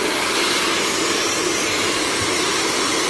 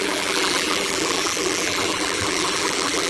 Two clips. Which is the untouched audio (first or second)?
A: first